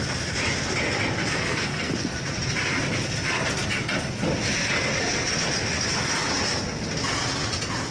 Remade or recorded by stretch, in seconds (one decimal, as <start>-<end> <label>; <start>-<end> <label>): 0.0-1.2 recorded; 1.2-1.9 remade; 1.9-7.9 recorded